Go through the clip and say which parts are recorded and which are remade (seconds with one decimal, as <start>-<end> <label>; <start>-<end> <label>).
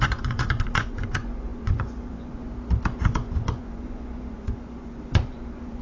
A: 0.0-2.5 remade; 2.5-3.1 recorded; 3.1-5.8 remade